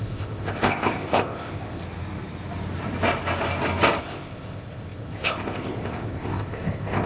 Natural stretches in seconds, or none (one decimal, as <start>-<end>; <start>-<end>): 1.8-4.0